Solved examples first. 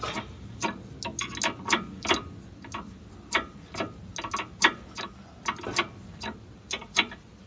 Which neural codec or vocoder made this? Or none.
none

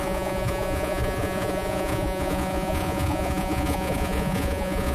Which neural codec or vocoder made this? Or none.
vocoder, Vocos